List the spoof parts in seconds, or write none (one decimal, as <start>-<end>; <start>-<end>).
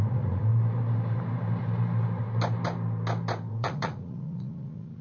0.0-0.5; 3.5-5.0